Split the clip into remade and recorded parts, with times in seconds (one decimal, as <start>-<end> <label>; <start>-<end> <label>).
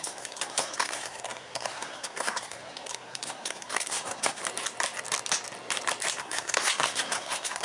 0.0-4.4 remade; 4.4-6.2 recorded; 6.2-7.6 remade